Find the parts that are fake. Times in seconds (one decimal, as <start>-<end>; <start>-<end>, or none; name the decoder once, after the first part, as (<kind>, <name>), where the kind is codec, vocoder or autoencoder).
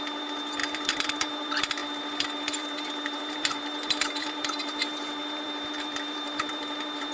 0.0-7.1 (vocoder, BigVGAN v2)